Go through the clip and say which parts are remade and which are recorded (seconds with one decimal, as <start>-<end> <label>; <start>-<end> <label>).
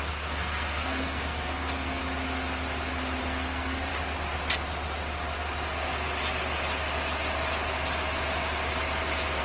0.0-2.0 remade; 2.0-3.2 recorded; 3.2-3.9 remade; 3.9-9.4 recorded